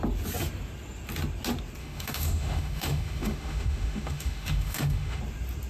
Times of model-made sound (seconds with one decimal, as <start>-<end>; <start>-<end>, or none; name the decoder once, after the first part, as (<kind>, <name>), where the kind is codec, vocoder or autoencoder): 1.8-5.2 (autoencoder, DAC-VAE)